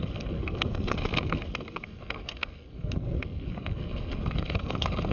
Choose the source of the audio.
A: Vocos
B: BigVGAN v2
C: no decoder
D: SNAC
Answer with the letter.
D